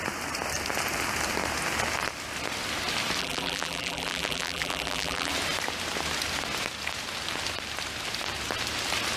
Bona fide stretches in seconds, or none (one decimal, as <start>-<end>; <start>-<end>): 0.0-3.2; 5.3-9.2